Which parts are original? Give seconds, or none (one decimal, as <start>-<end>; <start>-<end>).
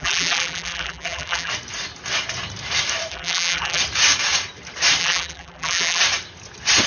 1.5-3.1; 3.8-5.0; 6.0-6.9